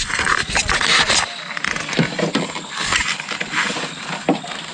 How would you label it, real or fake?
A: real